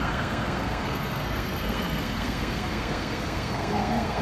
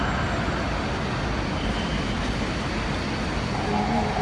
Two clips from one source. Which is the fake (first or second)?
first